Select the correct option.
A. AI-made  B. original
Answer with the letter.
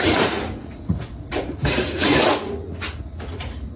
A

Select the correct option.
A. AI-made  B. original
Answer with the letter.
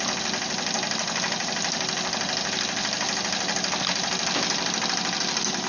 B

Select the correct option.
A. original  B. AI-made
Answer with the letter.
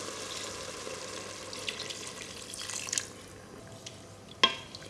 A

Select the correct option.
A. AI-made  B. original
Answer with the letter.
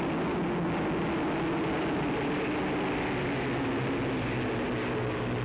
B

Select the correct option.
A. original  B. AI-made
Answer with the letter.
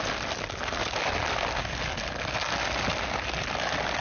A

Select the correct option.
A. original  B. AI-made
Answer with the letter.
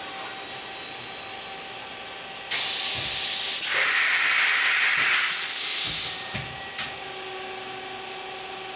A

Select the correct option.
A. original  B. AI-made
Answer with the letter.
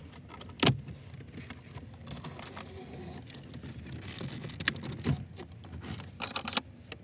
A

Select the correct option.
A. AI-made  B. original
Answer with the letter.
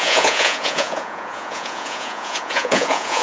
A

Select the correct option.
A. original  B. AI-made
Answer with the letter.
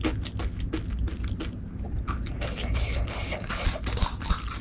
A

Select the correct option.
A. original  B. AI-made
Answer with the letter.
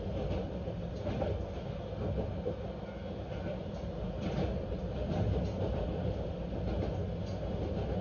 A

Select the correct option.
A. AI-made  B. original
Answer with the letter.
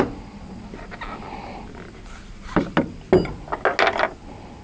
B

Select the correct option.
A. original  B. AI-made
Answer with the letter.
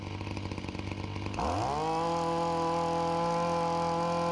A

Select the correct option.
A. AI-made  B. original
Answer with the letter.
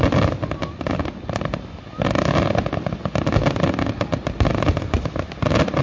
B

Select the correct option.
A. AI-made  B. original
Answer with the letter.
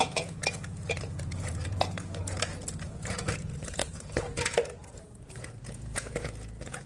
A